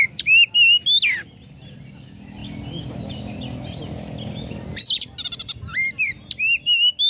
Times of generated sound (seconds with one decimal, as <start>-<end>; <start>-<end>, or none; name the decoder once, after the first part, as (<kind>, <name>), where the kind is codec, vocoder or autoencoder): none